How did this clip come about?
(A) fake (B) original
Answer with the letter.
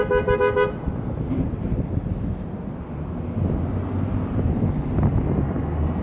B